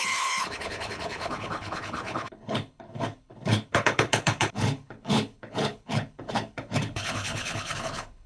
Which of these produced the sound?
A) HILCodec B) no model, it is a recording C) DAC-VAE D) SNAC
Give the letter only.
A